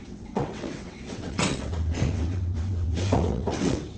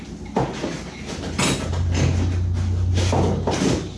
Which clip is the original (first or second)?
second